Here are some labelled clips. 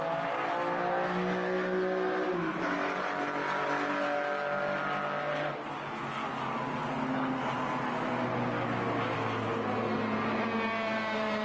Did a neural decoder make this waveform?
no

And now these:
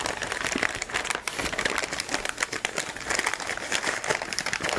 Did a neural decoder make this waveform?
no